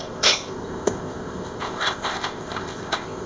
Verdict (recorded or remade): remade